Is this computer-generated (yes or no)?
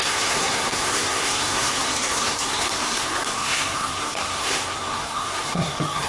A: yes